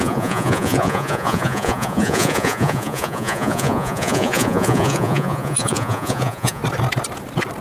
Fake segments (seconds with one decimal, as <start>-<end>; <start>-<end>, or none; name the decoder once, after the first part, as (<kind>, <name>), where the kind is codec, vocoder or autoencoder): 0.0-6.6 (vocoder, Vocos)